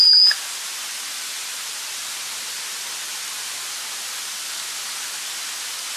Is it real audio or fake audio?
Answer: real